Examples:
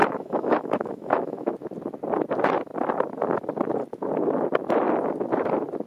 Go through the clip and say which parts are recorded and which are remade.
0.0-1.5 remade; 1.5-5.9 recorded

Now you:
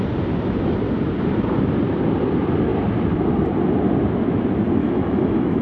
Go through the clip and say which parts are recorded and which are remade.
0.0-4.8 recorded; 4.8-5.6 remade